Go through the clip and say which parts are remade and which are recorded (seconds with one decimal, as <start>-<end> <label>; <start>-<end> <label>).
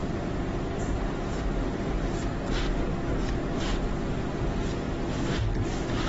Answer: 0.0-1.0 remade; 1.0-6.1 recorded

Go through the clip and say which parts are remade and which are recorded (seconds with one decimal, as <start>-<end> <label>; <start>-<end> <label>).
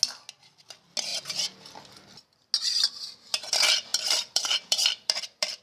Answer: 0.0-3.9 recorded; 3.9-5.6 remade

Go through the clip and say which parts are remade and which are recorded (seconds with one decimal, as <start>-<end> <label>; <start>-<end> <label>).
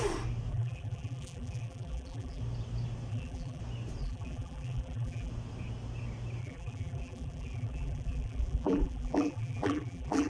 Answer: 0.0-0.5 recorded; 0.5-2.4 remade; 2.4-3.1 recorded; 3.1-3.6 remade; 3.6-4.0 recorded; 4.0-5.3 remade; 5.3-6.4 recorded; 6.4-10.3 remade